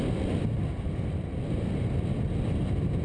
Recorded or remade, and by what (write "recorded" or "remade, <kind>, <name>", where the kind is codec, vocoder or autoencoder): recorded